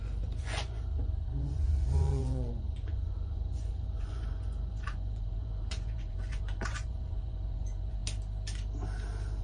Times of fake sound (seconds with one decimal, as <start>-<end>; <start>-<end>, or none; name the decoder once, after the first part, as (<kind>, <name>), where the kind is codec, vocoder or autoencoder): 0.0-8.0 (vocoder, Vocos)